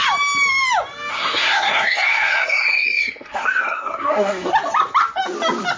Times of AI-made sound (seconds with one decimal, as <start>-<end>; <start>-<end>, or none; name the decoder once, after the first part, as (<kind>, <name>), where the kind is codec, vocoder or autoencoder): 1.1-4.5 (codec, SNAC)